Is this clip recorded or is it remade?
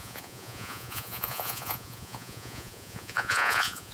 remade